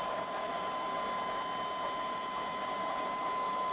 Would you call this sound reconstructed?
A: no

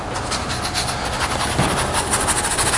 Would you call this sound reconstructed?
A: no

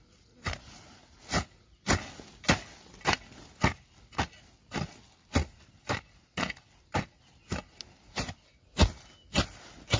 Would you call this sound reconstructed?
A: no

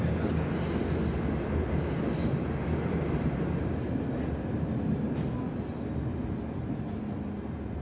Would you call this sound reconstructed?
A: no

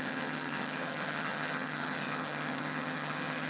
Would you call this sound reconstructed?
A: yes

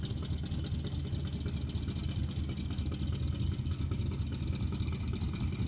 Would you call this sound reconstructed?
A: no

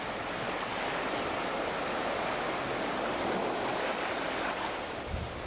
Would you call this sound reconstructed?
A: no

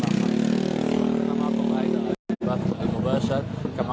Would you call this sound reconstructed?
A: no